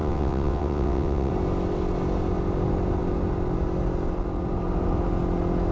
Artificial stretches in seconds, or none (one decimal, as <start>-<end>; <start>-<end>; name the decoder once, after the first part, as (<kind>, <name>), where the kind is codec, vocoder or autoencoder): 0.0-1.3 (vocoder, WaveNeXt)